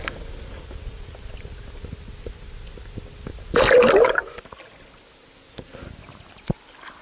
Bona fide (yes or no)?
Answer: yes